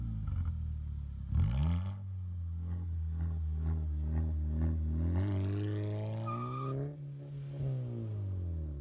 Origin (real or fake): real